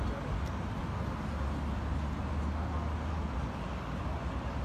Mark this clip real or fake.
real